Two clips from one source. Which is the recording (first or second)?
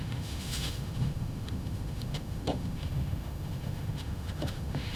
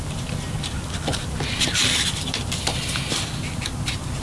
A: second